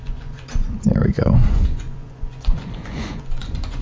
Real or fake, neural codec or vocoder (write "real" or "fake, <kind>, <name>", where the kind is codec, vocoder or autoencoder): fake, vocoder, Vocos